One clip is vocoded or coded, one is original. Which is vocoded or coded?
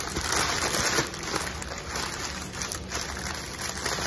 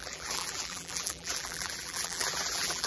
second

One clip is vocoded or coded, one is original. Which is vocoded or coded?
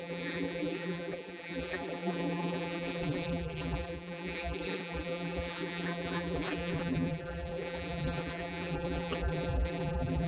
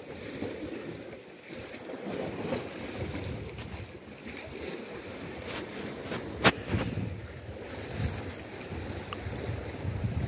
first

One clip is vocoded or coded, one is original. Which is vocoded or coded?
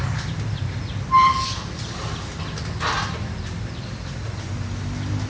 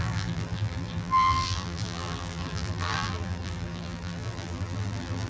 second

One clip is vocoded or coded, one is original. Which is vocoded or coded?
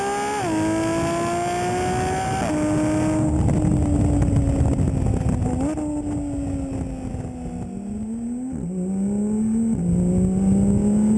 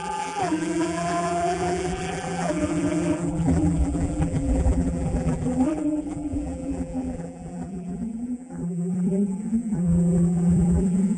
second